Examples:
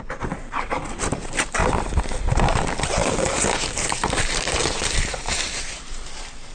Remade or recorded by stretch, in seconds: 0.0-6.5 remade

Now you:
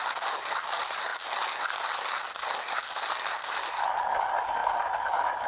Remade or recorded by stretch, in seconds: 0.0-5.5 recorded

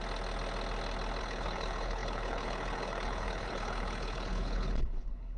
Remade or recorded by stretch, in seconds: 0.0-1.2 recorded; 1.2-5.4 remade